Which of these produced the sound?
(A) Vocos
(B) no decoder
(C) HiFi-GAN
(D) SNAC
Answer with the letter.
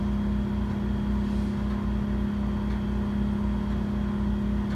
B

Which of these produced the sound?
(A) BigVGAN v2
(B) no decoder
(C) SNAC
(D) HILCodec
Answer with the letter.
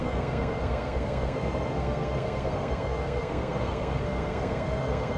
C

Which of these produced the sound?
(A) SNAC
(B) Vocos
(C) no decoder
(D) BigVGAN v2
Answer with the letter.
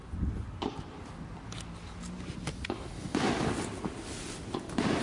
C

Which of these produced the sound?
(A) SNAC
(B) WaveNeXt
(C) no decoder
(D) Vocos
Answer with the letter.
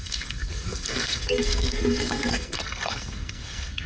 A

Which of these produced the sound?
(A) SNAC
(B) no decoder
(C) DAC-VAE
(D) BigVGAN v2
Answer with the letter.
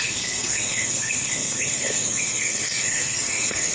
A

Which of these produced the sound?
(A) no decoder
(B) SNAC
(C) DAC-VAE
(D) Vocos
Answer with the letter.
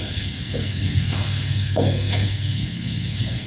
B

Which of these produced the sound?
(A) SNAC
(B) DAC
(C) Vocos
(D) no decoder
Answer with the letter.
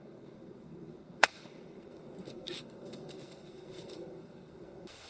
A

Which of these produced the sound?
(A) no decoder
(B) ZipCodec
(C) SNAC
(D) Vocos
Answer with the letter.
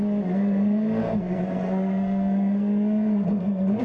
C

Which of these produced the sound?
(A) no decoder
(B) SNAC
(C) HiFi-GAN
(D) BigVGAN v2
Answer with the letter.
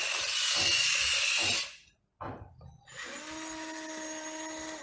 A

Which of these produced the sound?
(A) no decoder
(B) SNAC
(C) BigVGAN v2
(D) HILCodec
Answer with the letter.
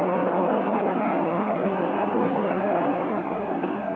B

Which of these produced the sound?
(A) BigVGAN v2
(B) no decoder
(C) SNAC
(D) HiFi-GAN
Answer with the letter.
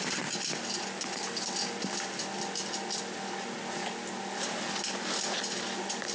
B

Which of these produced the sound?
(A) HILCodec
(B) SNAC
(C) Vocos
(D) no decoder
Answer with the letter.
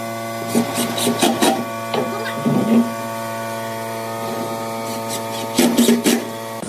D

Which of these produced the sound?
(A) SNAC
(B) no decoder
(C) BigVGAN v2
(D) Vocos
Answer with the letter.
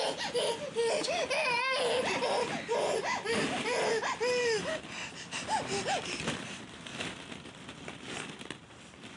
B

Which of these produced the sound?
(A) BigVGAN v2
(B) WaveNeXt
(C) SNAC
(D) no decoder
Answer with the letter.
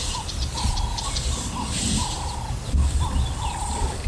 D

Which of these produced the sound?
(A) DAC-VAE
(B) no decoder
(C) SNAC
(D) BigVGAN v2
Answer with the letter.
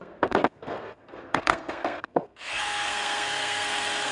C